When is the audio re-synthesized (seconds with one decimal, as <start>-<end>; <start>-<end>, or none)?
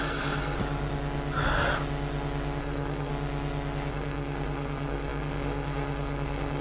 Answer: 0.0-0.6; 2.6-3.1; 3.9-6.6